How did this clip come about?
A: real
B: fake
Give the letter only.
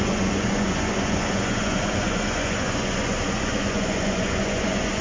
B